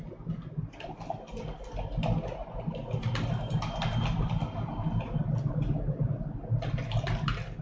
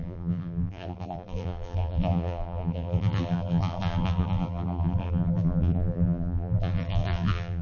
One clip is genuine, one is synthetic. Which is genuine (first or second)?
first